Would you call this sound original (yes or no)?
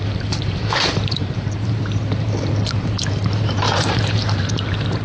no